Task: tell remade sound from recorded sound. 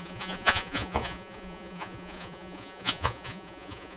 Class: remade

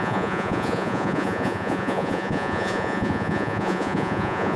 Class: remade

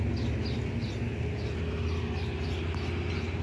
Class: recorded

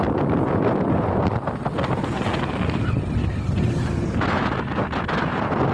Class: recorded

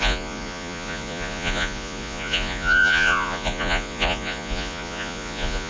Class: remade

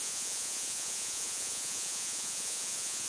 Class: remade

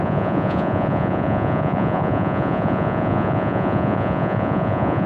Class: remade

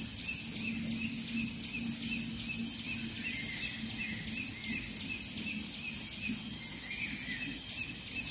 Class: recorded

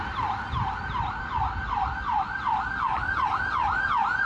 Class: recorded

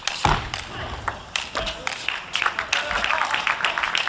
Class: recorded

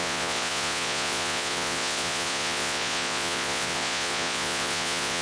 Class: remade